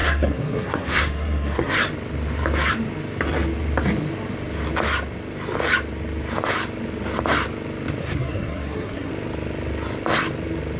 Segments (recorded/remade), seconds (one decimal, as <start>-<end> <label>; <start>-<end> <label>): 0.0-1.7 remade; 1.7-8.0 recorded; 8.0-9.1 remade; 9.1-10.8 recorded